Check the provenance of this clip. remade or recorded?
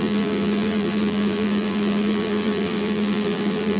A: remade